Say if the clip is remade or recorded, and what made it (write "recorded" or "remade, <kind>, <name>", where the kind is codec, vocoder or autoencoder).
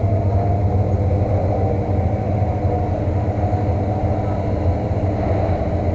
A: recorded